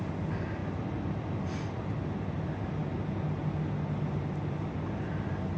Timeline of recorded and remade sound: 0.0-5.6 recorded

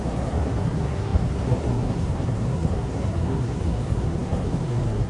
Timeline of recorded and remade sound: 0.0-5.1 remade

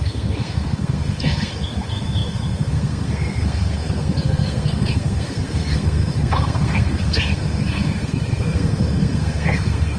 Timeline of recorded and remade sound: 0.0-10.0 remade

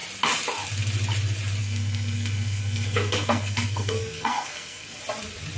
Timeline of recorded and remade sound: 0.0-1.6 recorded; 1.6-5.0 remade; 5.0-5.6 recorded

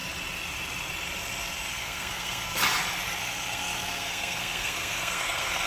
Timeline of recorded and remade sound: 0.0-1.7 recorded; 1.7-2.6 remade; 2.6-3.2 recorded; 3.2-5.7 remade

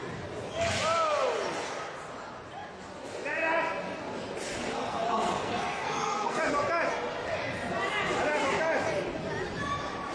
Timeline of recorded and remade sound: 0.0-4.7 recorded; 4.7-6.4 remade; 6.4-10.1 recorded

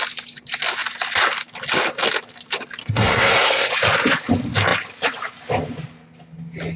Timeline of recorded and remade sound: 0.0-2.8 recorded; 2.8-3.7 remade; 3.7-6.8 recorded

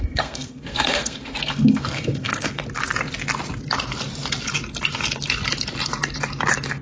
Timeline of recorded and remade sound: 0.0-2.6 remade; 2.6-6.8 recorded